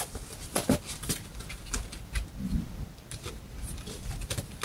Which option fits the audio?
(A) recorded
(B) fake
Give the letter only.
A